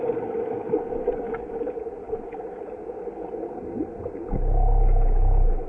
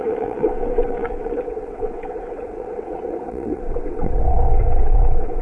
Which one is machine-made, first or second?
second